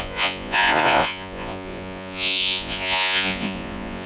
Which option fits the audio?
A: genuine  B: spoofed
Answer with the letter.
B